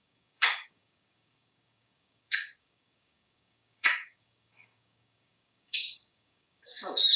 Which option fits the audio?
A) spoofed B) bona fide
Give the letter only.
A